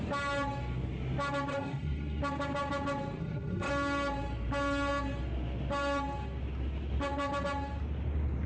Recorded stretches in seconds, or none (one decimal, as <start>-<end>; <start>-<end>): 0.0-1.5; 2.2-3.2; 3.7-8.5